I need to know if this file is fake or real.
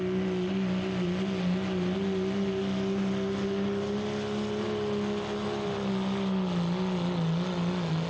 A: real